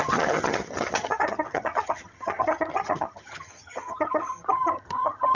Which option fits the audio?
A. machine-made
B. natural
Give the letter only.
A